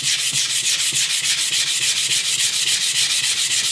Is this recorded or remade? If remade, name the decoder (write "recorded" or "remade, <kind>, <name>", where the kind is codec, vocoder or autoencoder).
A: recorded